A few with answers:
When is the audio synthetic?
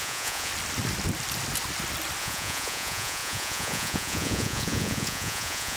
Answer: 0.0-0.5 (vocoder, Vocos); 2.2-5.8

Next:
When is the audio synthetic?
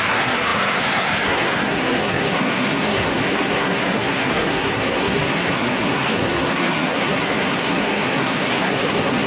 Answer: 0.0-9.3 (codec, SNAC)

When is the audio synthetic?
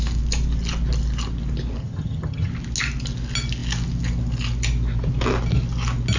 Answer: 1.8-2.5 (vocoder, HiFi-GAN)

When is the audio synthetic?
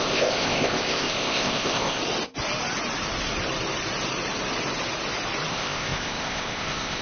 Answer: 0.0-2.0 (codec, ZipCodec); 5.5-7.0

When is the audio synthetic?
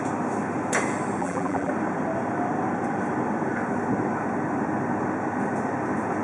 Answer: 1.2-1.7 (vocoder, BigVGAN v2)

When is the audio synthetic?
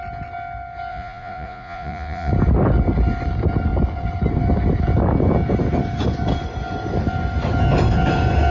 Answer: 0.9-2.3 (vocoder, Vocos)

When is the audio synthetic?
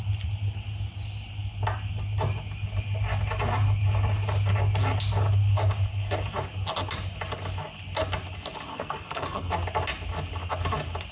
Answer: 8.7-9.5 (codec, SNAC)